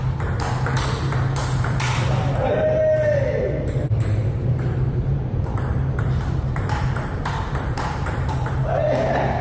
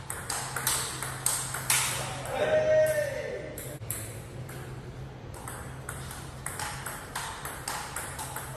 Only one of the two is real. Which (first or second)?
second